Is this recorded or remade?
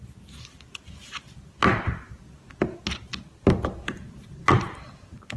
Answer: remade